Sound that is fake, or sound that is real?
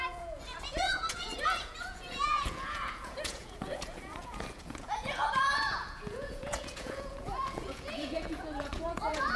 fake